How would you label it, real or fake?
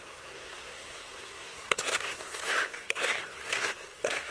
fake